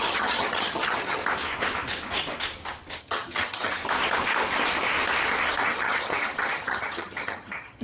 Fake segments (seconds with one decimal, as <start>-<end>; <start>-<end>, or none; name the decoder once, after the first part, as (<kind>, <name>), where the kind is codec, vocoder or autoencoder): 0.0-1.2 (vocoder, HiFi-GAN); 3.0-3.8; 5.6-7.8